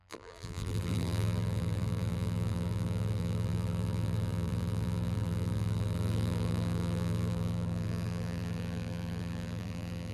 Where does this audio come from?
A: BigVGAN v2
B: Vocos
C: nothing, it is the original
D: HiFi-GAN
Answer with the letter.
A